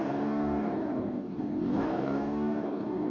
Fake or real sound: fake